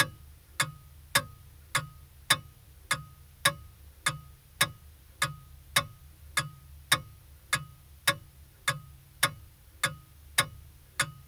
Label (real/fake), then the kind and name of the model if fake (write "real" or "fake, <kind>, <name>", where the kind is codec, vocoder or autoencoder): real